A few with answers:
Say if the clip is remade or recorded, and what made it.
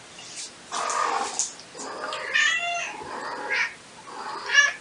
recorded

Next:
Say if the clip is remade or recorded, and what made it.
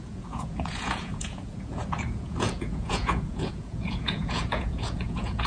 remade, vocoder, Vocos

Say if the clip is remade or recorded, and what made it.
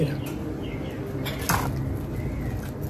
recorded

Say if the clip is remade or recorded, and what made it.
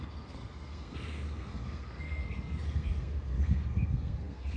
remade, codec, SNAC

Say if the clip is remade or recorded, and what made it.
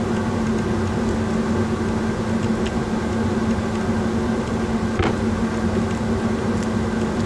recorded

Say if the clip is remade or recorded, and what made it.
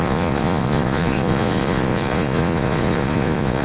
remade, vocoder, Vocos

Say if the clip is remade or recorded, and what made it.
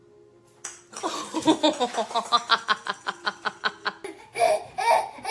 recorded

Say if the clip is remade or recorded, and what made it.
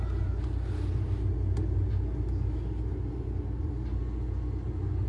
recorded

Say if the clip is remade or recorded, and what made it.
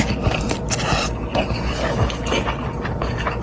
recorded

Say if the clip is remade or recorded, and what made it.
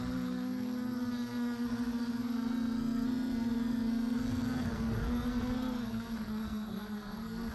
remade, codec, SNAC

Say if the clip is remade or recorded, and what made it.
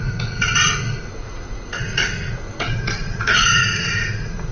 remade, vocoder, Vocos